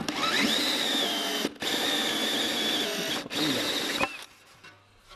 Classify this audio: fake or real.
real